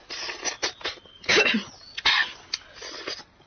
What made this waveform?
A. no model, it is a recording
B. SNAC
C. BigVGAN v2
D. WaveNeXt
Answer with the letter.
A